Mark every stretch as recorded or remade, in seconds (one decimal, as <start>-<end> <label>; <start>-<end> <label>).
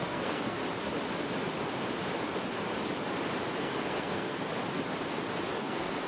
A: 0.0-0.6 remade; 0.6-3.6 recorded; 3.6-4.4 remade; 4.4-5.6 recorded; 5.6-6.1 remade